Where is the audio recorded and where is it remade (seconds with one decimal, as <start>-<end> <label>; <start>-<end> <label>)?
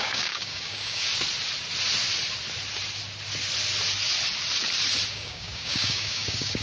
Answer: 0.0-1.1 remade; 1.1-5.1 recorded; 5.1-6.6 remade